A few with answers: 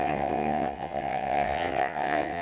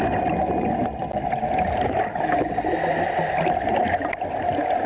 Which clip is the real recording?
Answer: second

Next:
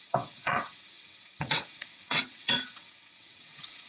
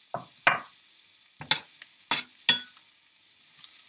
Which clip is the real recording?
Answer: second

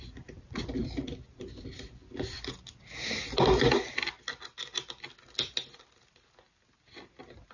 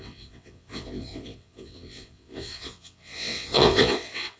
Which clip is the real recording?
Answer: first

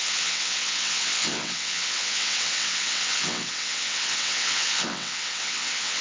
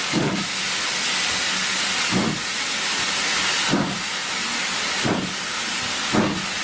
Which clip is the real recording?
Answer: second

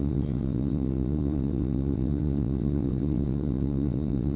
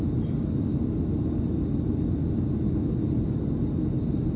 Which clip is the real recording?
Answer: second